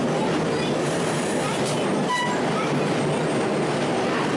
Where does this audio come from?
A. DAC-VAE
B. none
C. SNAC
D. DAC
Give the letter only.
B